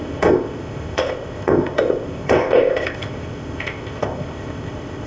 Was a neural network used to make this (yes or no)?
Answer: yes